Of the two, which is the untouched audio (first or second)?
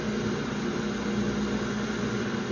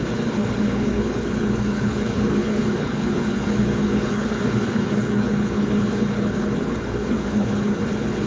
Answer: first